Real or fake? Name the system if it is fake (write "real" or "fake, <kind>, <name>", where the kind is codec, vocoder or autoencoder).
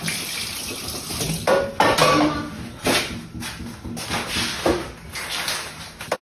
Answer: real